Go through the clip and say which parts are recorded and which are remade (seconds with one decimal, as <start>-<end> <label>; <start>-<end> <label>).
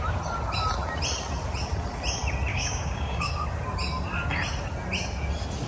0.0-2.5 recorded; 2.5-3.3 remade; 3.3-5.7 recorded